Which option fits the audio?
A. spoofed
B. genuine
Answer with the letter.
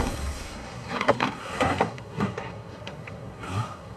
A